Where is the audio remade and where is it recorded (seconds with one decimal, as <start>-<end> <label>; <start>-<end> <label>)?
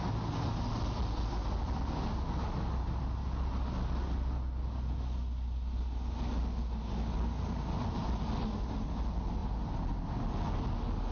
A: 0.0-11.1 recorded